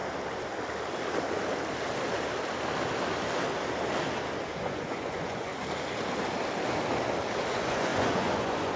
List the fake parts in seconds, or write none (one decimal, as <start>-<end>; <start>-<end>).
4.6-5.5; 7.5-8.8